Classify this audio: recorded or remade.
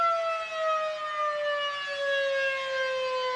recorded